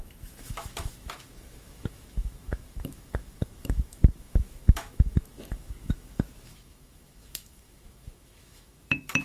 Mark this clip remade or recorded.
remade